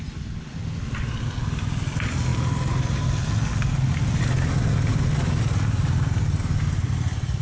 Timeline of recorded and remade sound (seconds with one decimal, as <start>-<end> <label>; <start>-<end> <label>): 0.0-7.4 recorded